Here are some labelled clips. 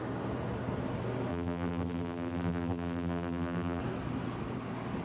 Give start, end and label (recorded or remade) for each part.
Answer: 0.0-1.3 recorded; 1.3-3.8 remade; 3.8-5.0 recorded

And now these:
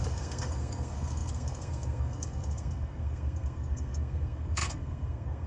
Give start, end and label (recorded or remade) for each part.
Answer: 0.0-5.5 remade

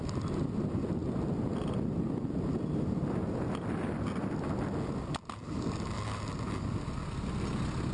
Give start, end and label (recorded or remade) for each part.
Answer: 0.0-7.9 recorded

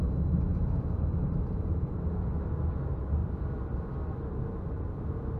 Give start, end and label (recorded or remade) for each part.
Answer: 0.0-5.4 recorded

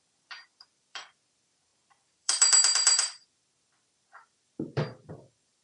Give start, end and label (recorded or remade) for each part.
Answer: 0.0-5.6 remade

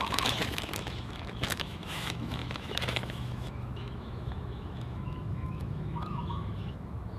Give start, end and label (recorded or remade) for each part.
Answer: 0.0-7.2 remade